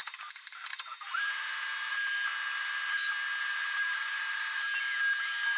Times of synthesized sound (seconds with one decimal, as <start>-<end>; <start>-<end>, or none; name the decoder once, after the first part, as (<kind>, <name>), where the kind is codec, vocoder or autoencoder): 0.0-2.1 (vocoder, BigVGAN v2); 3.5-4.8